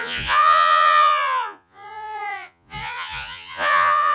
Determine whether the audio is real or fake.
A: fake